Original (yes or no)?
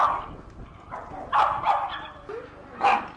yes